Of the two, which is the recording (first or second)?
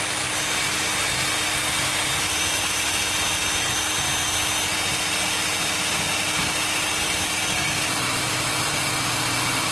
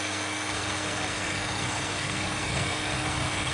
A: first